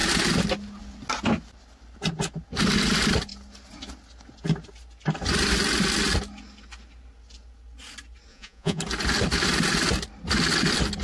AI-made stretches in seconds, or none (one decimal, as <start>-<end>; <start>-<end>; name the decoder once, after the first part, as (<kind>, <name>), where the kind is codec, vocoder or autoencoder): 8.3-8.8 (vocoder, Vocos)